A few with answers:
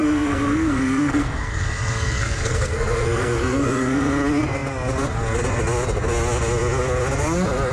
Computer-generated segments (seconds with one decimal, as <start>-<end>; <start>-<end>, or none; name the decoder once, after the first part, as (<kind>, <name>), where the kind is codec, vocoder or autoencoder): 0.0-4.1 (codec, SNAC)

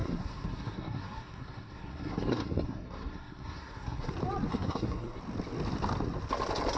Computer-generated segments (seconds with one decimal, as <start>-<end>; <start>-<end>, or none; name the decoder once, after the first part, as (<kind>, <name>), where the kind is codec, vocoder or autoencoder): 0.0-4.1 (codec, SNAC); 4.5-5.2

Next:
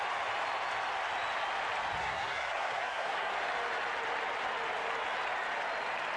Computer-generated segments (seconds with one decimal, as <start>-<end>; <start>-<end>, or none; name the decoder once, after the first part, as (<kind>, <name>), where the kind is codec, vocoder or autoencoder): 2.0-3.3 (codec, SNAC)

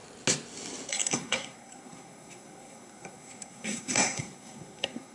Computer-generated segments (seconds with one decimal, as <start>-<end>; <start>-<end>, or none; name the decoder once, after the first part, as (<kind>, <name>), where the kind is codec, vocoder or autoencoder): 0.9-5.1 (codec, SNAC)

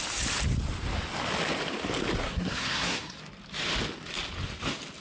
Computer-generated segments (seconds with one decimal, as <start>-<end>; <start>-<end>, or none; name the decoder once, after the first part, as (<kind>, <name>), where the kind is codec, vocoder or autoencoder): 2.2-3.2 (codec, SNAC)

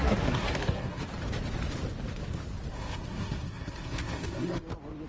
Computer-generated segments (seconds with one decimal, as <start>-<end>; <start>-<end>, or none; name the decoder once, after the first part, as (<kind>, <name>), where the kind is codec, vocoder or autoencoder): 0.0-1.0 (codec, SNAC); 2.7-4.6

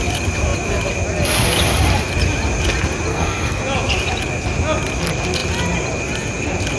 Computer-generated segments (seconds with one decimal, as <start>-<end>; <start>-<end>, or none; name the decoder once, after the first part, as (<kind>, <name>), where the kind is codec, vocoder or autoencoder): 3.1-3.6 (codec, SNAC)